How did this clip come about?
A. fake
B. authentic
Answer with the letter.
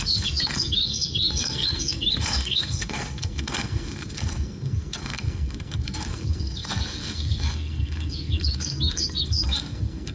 A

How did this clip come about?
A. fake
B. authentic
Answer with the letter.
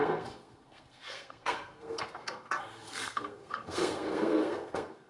A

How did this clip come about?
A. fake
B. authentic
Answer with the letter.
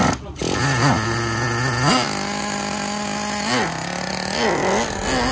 B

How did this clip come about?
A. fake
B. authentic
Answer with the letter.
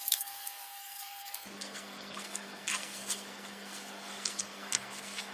A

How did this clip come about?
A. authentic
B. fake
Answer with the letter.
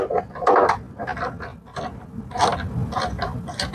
A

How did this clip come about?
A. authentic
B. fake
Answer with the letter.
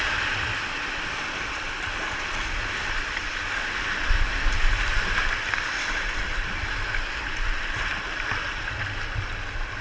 A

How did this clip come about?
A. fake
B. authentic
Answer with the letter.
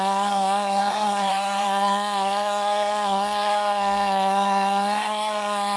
A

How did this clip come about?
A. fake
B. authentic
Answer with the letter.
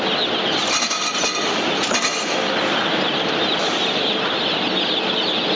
B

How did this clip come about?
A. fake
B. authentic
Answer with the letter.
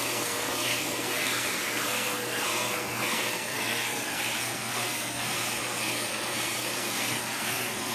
A